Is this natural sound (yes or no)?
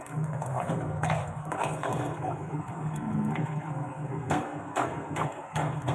no